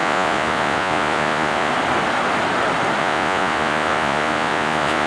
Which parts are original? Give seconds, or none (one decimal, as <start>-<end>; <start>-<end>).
1.7-3.0